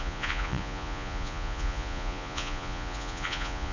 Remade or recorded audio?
remade